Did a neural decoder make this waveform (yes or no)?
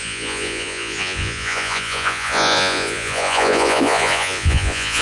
yes